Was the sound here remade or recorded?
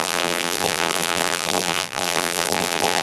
remade